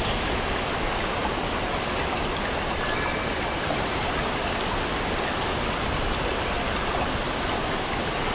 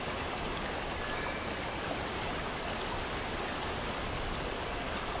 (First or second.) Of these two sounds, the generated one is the second